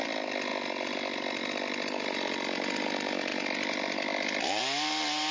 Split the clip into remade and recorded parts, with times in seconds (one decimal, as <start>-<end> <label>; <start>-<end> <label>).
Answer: 0.0-5.3 recorded